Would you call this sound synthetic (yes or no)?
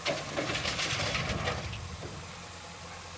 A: no